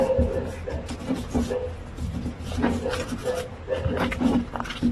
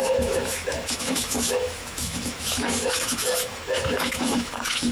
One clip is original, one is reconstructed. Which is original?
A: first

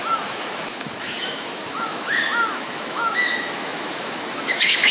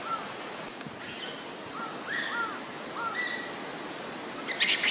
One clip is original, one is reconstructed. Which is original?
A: second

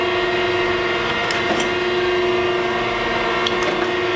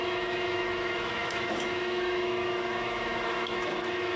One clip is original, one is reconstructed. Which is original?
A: first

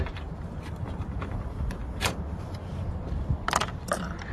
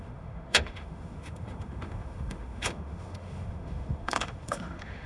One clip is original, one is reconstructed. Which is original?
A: first